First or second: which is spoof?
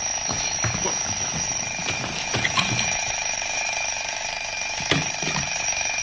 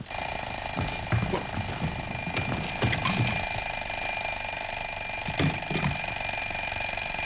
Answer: first